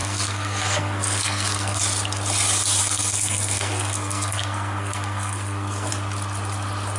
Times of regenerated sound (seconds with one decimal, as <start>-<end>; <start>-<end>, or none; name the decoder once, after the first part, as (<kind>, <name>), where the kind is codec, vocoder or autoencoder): 0.0-1.8 (codec, SNAC); 2.8-5.9